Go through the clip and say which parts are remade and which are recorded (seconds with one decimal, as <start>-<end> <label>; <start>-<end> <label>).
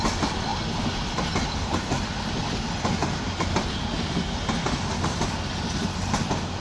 0.0-6.6 recorded